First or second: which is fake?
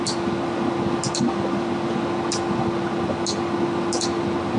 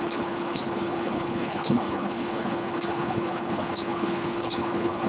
second